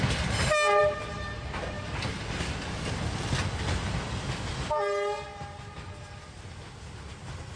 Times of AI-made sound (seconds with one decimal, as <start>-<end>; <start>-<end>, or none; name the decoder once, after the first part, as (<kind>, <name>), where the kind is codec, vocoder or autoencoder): none